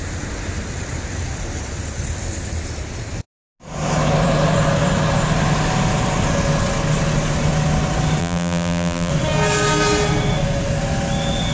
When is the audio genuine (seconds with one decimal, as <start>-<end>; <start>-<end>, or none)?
0.0-8.2; 9.1-11.5